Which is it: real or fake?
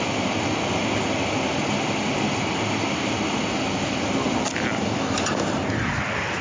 real